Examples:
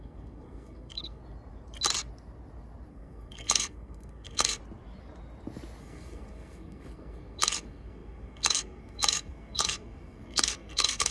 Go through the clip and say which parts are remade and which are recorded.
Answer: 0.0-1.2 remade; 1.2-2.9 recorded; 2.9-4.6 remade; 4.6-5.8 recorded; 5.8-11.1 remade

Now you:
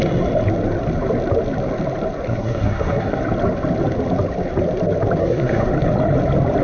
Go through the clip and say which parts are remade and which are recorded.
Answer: 0.0-2.3 recorded; 2.3-3.2 remade; 3.2-5.2 recorded; 5.2-5.7 remade; 5.7-6.6 recorded

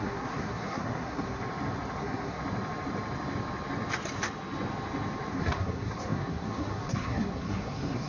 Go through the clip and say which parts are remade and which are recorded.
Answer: 0.0-1.4 remade; 1.4-2.0 recorded; 2.0-2.4 remade; 2.4-5.3 recorded; 5.3-8.1 remade